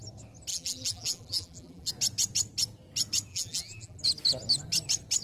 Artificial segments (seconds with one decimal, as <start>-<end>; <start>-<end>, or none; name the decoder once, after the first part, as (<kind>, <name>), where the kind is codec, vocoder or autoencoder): 0.5-1.9 (vocoder, BigVGAN v2); 3.3-4.0